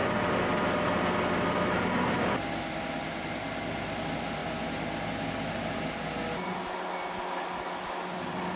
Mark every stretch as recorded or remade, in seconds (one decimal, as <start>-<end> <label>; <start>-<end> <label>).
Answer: 0.0-8.6 recorded